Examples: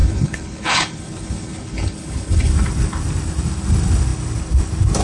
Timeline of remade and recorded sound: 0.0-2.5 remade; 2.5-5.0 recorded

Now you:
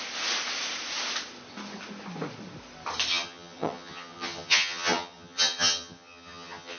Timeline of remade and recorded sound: 0.0-3.1 recorded; 3.1-6.8 remade

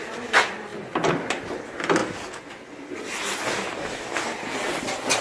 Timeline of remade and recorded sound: 0.0-5.2 recorded

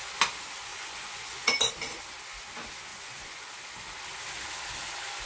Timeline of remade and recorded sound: 0.0-0.7 recorded; 0.7-1.7 remade; 1.7-2.9 recorded; 2.9-3.5 remade; 3.5-5.2 recorded

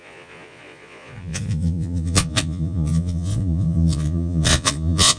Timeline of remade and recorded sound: 0.0-5.2 remade

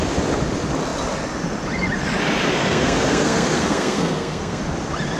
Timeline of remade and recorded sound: 0.0-2.6 recorded; 2.6-4.6 remade; 4.6-5.2 recorded

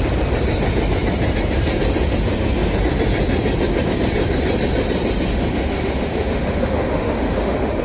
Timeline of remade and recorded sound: 0.0-5.3 recorded; 5.3-7.8 remade

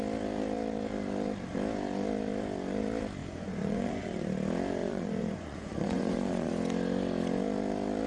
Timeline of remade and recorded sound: 0.0-3.2 recorded; 3.2-4.3 remade; 4.3-4.8 recorded; 4.8-6.5 remade; 6.5-8.1 recorded